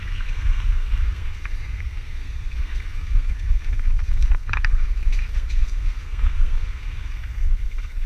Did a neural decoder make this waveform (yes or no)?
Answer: yes